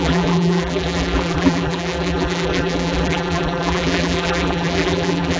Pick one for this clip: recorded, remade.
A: remade